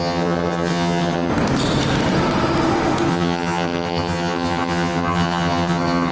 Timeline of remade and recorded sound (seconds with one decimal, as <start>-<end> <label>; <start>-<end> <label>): 0.0-1.3 remade; 1.3-3.1 recorded; 3.1-6.1 remade